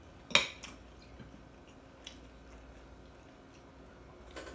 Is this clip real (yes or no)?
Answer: yes